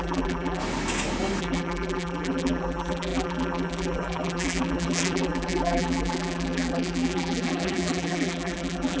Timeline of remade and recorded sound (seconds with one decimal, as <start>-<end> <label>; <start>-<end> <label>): 0.0-0.6 remade; 0.6-1.4 recorded; 1.4-9.0 remade